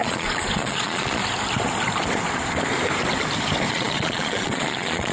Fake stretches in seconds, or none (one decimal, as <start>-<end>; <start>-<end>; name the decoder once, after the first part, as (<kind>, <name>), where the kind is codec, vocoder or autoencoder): 0.0-1.2 (vocoder, Vocos); 3.7-5.1